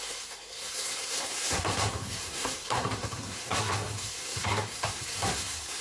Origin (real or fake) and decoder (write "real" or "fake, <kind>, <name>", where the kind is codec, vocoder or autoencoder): fake, codec, SNAC